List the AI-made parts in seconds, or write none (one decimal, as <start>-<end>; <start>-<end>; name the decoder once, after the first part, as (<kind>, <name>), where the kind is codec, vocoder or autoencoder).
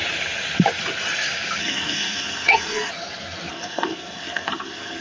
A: 1.6-2.9 (codec, SNAC); 3.5-5.0